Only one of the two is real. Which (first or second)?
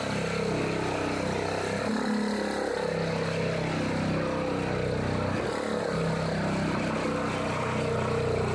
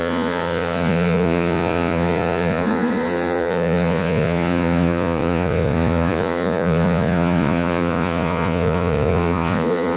first